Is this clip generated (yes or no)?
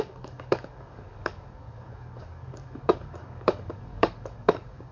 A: yes